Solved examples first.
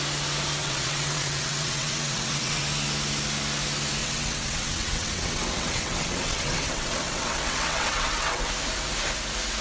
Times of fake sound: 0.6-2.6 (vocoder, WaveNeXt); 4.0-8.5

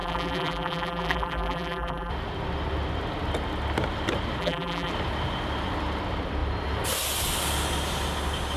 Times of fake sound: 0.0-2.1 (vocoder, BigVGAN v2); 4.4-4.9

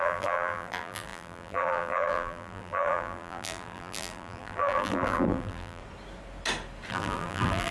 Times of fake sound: 0.0-5.8 (vocoder, BigVGAN v2); 6.9-7.7

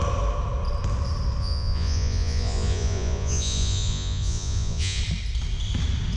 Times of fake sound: 1.4-5.0 (vocoder, Vocos)

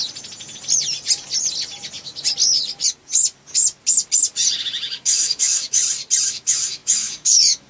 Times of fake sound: 4.6-5.8 (autoencoder, DAC-VAE); 6.3-7.7

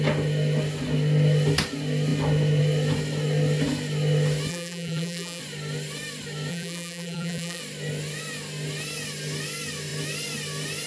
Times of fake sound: 4.5-5.4 (vocoder, BigVGAN v2); 6.5-7.6

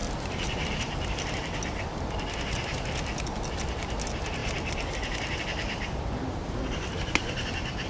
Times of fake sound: 0.0-4.4 (vocoder, BigVGAN v2); 5.4-7.9

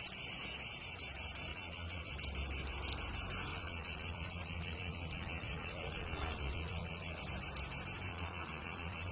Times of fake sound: 1.5-2.1 (vocoder, Vocos); 3.5-7.2; 8.1-9.1